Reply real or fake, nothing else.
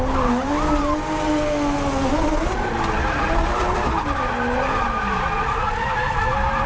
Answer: real